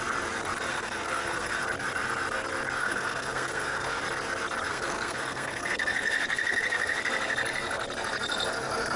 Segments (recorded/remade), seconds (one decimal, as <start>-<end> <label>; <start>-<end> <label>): 0.0-0.7 recorded; 0.7-1.6 remade; 1.6-2.8 recorded; 2.8-4.0 remade; 4.0-4.7 recorded; 4.7-7.0 remade; 7.0-9.0 recorded